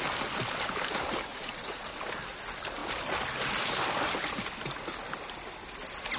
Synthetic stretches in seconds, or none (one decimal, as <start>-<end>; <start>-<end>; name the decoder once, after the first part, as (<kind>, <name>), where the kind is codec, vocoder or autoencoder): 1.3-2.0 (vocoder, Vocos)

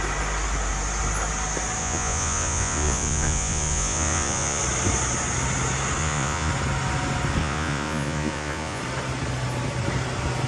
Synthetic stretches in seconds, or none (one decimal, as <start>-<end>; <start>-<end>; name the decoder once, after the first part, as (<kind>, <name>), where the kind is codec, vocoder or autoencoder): 1.8-4.6 (vocoder, Vocos); 6.0-6.5; 7.4-8.8

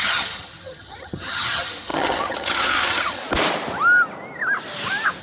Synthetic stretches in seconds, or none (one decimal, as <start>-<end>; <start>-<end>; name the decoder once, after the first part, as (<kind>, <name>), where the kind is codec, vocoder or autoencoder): 0.0-3.2 (vocoder, HiFi-GAN)

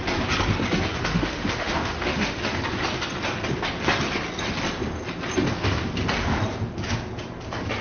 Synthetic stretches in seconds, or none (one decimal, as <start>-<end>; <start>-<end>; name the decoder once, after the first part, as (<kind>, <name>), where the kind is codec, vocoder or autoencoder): 0.9-2.4 (autoencoder, DAC-VAE)

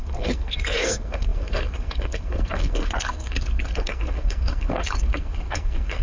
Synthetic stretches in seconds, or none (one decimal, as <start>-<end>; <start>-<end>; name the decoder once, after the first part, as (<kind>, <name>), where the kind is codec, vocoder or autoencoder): 0.0-6.0 (codec, SNAC)